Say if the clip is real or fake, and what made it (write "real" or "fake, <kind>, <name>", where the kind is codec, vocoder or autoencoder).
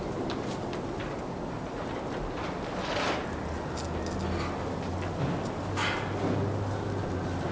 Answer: real